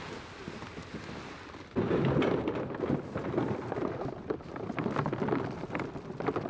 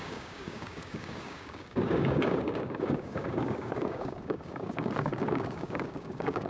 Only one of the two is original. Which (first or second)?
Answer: first